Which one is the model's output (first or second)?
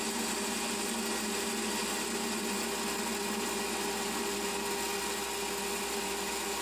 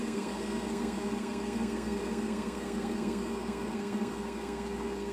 second